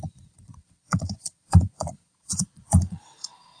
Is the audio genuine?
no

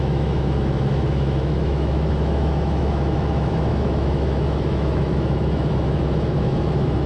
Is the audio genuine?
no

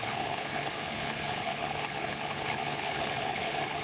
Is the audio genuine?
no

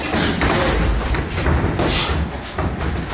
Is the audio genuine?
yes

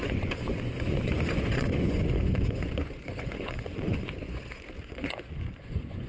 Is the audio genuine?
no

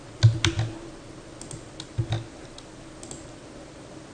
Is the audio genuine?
yes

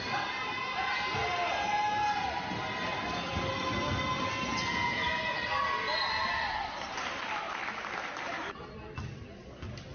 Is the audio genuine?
yes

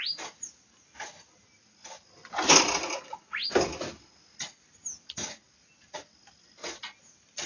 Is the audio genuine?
yes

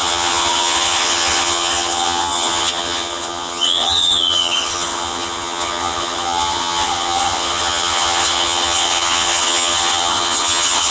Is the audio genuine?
no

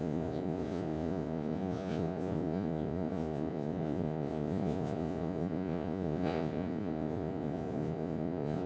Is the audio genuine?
no